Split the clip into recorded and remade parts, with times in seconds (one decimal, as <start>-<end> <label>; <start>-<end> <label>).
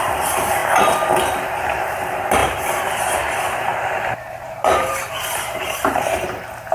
0.0-0.6 remade; 0.6-1.6 recorded; 1.6-6.7 remade